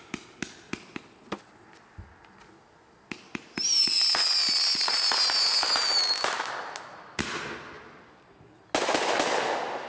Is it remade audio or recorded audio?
recorded